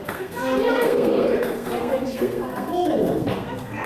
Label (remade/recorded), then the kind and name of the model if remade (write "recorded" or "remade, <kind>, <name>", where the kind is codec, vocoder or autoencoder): remade, codec, SNAC